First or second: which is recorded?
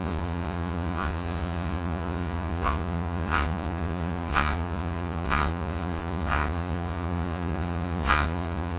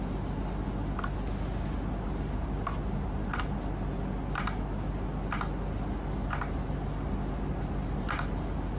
second